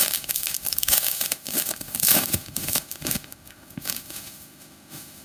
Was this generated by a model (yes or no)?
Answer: yes